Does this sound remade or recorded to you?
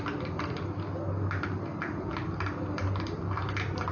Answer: recorded